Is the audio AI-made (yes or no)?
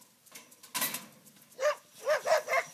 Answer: no